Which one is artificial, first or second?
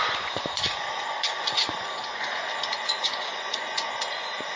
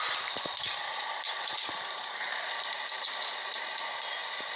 first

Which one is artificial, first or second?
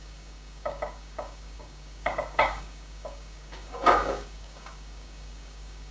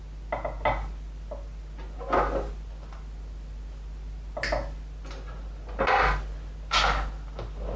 first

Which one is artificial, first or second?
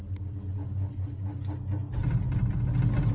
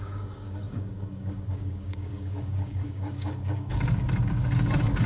second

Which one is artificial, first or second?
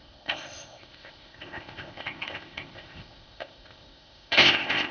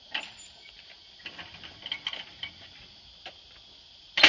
first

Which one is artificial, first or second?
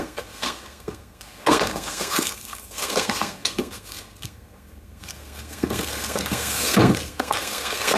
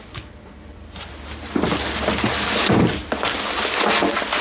first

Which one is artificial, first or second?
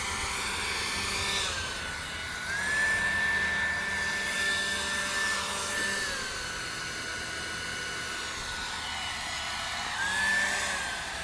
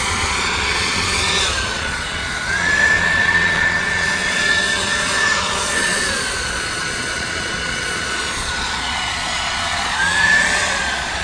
second